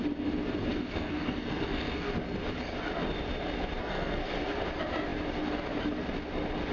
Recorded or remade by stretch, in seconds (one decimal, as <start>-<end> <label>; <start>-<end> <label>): 0.0-0.7 recorded; 0.7-2.1 remade; 2.1-3.8 recorded; 3.8-4.4 remade; 4.4-6.7 recorded